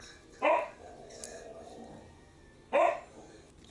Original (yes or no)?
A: yes